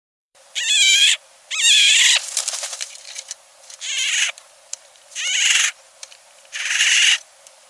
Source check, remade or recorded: remade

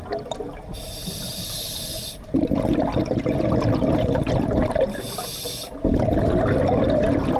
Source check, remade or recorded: recorded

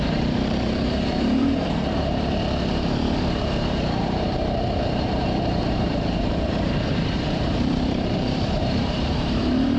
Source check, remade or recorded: remade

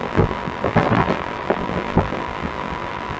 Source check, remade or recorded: remade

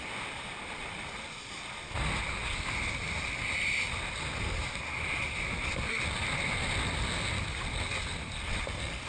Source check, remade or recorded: recorded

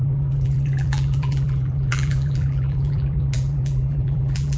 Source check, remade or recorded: remade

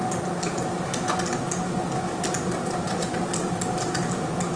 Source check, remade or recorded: recorded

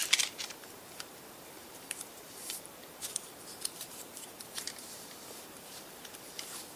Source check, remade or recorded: remade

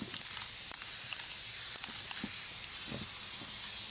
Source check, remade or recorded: recorded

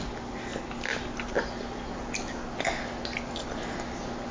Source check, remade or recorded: recorded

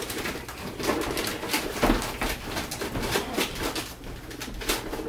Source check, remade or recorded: recorded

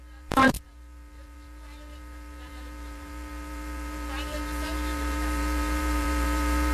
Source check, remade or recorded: remade